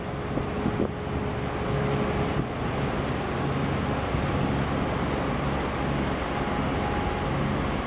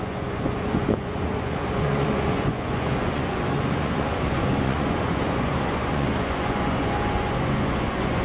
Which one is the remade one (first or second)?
second